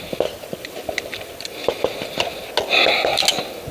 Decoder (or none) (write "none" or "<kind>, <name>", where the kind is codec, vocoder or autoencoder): none